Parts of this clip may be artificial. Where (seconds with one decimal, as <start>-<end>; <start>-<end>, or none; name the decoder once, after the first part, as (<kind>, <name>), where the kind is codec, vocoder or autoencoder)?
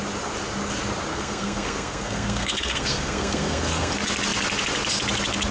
1.1-3.9 (codec, SNAC)